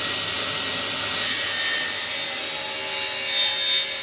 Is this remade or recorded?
recorded